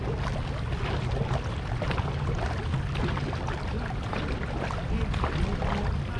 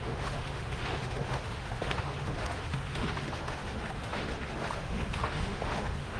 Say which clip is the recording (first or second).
first